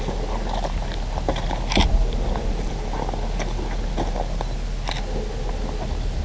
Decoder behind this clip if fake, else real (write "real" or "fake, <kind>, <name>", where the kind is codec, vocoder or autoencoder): real